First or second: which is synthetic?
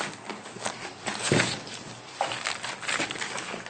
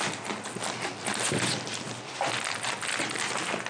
first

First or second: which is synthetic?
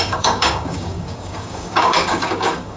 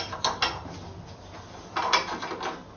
first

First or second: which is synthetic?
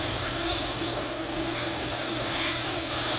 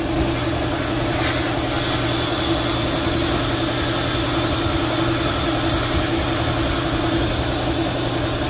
first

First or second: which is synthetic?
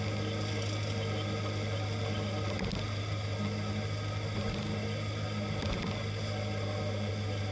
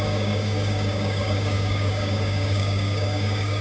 second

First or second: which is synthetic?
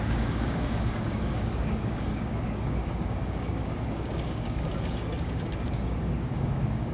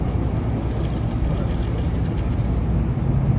first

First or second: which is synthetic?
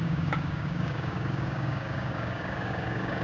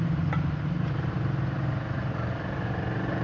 first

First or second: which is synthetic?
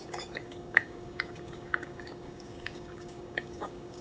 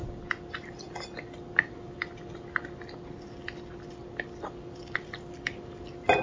first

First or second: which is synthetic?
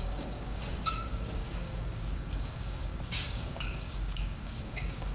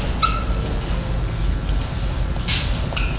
first